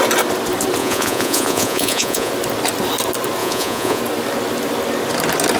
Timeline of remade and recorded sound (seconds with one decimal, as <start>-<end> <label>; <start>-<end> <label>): 0.0-0.8 recorded; 0.8-2.3 remade; 2.3-3.4 recorded; 3.4-4.0 remade; 4.0-5.6 recorded